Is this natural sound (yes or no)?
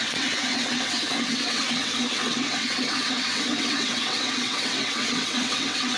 no